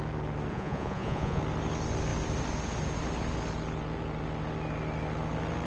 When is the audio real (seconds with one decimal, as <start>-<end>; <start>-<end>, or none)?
0.0-0.5; 1.4-5.7